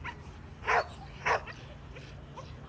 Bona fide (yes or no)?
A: yes